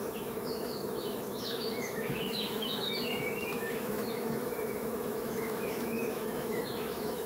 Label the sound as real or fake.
fake